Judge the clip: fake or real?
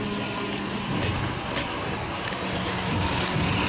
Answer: real